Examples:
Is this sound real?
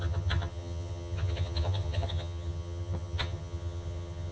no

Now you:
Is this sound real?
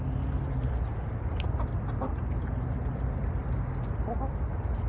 yes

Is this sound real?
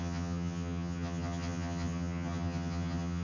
no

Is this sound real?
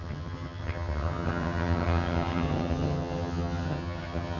no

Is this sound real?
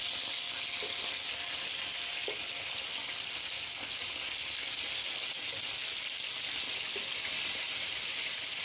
yes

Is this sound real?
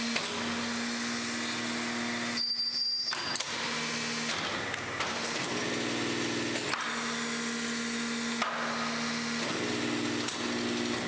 yes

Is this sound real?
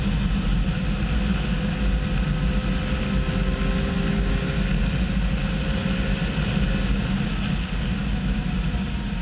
yes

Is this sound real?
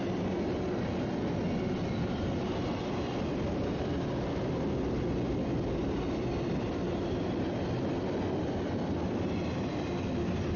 yes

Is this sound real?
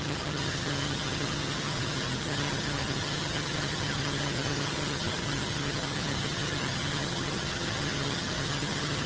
no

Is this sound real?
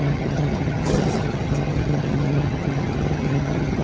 no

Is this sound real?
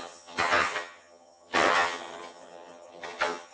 no